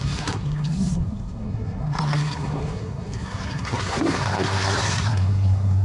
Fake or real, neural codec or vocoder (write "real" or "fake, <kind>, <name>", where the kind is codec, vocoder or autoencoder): fake, codec, SNAC